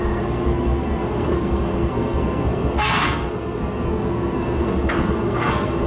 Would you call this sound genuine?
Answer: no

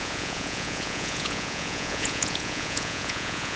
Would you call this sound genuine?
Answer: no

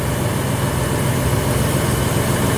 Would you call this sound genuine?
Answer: yes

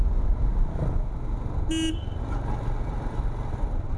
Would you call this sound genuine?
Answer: yes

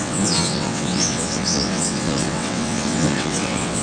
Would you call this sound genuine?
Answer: no